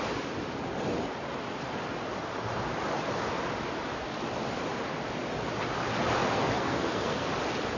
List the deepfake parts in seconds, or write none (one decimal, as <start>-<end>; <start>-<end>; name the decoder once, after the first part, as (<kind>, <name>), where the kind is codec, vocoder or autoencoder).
6.2-7.3 (codec, SNAC)